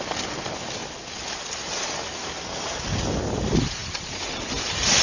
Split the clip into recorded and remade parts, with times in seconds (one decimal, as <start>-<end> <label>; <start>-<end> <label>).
0.0-5.0 recorded